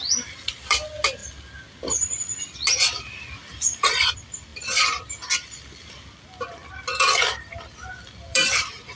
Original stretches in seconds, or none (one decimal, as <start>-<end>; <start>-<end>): 1.2-3.0